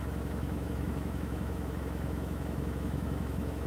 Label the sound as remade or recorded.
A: remade